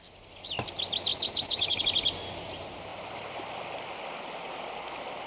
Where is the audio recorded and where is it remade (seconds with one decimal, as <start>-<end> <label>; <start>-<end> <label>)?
0.0-1.1 recorded; 1.1-1.8 remade; 1.8-5.3 recorded